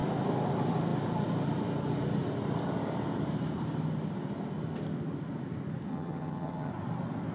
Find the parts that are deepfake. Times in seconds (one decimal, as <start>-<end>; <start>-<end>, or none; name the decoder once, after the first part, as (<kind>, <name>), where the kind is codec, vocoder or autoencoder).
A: 5.9-6.7 (vocoder, HiFi-GAN)